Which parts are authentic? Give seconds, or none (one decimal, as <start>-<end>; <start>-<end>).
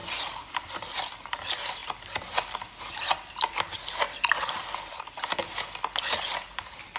0.0-7.0